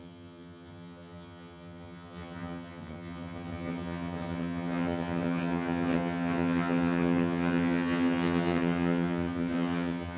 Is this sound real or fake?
fake